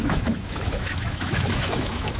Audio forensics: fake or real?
fake